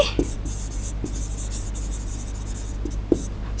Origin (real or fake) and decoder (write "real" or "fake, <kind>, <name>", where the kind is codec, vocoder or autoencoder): real